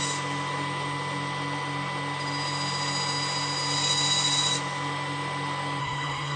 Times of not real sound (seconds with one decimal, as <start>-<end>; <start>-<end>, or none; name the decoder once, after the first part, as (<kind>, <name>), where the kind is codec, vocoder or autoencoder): 5.8-6.4 (codec, SNAC)